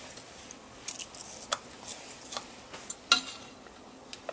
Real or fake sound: real